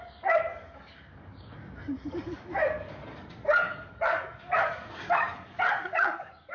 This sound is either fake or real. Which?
fake